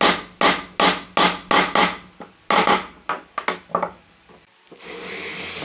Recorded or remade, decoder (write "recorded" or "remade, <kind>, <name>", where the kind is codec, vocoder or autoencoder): recorded